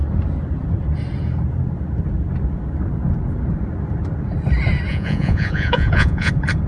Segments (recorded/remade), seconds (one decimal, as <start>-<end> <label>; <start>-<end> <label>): 0.0-4.9 recorded; 4.9-6.3 remade; 6.3-6.7 recorded